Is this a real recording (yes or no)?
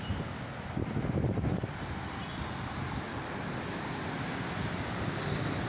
yes